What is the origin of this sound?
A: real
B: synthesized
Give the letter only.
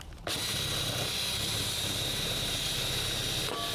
A